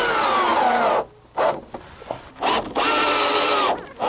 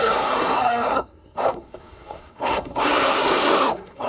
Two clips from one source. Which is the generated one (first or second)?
second